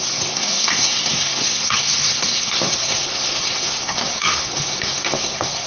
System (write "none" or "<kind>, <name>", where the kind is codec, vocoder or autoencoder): codec, SNAC